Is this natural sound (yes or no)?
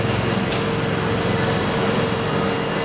yes